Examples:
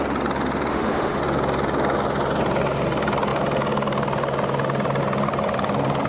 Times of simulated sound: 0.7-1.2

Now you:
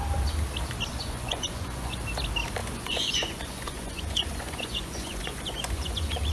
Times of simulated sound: 0.9-2.0; 2.6-6.3

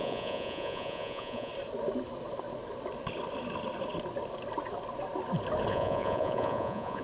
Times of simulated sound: 0.0-1.5; 5.7-7.0

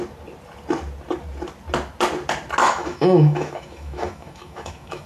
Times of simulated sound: 2.6-5.1

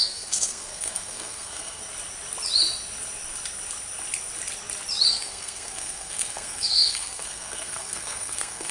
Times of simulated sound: 0.0-1.8; 5.1-8.7

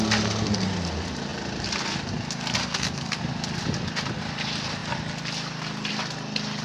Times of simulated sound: 2.6-3.2

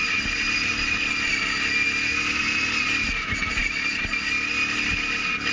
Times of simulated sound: none